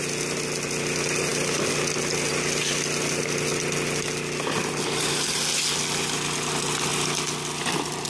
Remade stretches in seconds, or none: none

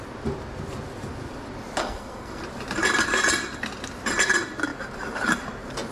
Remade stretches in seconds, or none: 1.8-2.4

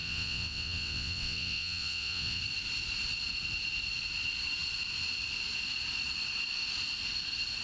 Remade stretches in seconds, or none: 0.0-2.4